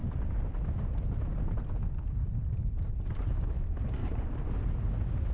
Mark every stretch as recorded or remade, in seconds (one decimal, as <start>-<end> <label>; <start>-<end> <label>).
0.0-3.2 recorded; 3.2-4.0 remade; 4.0-5.3 recorded